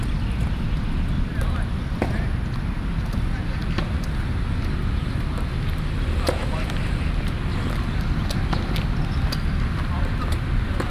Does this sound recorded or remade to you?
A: recorded